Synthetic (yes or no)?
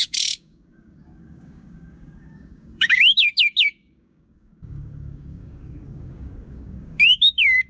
yes